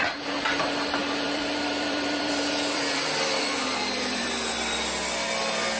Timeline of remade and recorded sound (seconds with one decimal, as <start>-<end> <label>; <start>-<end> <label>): 0.0-1.0 recorded; 1.0-4.5 remade; 4.5-5.8 recorded